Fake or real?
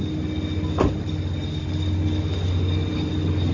real